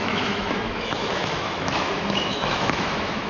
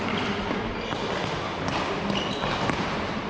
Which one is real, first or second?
second